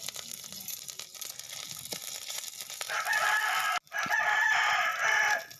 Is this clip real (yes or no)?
yes